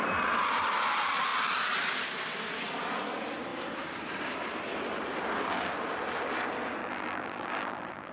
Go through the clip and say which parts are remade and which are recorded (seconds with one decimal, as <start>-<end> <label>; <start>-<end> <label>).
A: 0.0-6.8 recorded; 6.8-8.1 remade